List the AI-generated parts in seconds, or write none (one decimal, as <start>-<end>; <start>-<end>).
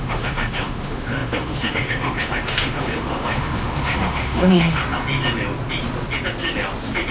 0.0-4.8